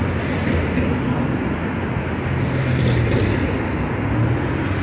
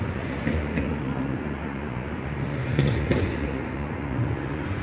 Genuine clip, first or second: first